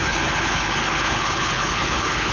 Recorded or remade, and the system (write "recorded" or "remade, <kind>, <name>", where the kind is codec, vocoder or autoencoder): remade, codec, HILCodec